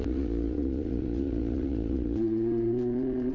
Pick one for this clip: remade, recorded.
remade